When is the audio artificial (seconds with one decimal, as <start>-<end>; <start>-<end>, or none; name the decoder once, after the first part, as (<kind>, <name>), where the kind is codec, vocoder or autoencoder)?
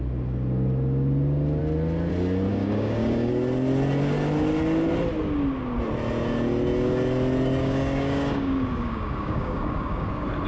2.5-3.3 (codec, DAC); 7.6-10.1